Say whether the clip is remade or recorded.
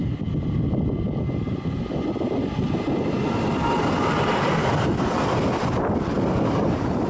recorded